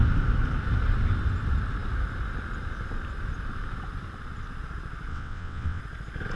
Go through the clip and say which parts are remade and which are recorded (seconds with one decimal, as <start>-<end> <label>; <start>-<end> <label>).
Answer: 0.0-5.1 recorded; 5.1-5.8 remade; 5.8-6.4 recorded